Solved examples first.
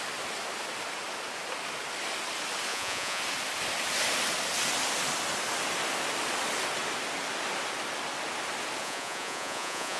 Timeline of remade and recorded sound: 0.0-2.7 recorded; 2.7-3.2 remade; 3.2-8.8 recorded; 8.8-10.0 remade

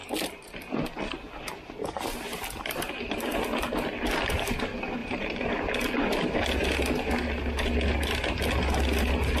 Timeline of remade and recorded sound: 0.0-0.5 remade; 0.5-5.0 recorded; 5.0-5.6 remade; 5.6-9.4 recorded

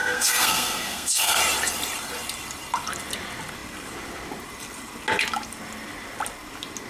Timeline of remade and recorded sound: 0.0-1.4 remade; 1.4-6.9 recorded

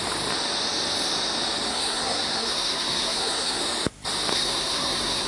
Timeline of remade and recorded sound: 0.0-1.7 recorded; 1.7-3.6 remade; 3.6-4.3 recorded; 4.3-5.3 remade